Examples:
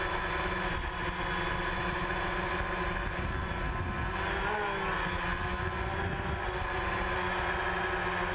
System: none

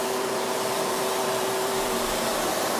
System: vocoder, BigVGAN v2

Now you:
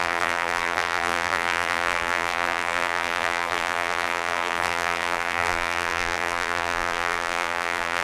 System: vocoder, BigVGAN v2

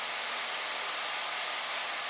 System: none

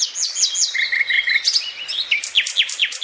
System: none